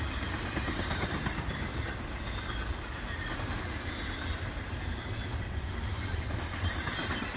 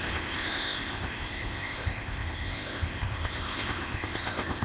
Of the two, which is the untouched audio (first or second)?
first